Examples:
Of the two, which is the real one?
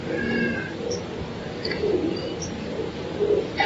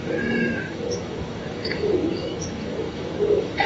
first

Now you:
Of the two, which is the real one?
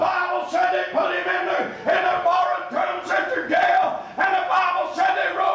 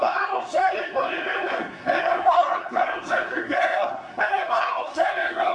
first